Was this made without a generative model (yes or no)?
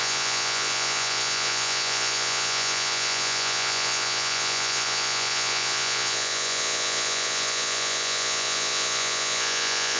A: no